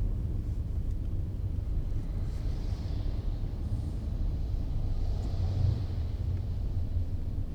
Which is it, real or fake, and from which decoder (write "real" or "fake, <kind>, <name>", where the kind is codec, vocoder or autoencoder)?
real